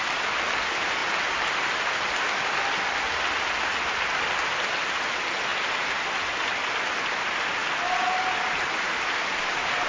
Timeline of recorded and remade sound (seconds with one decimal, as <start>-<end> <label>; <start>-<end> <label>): 0.0-9.9 recorded